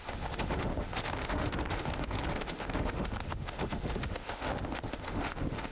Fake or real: fake